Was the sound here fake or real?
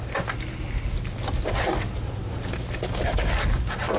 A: real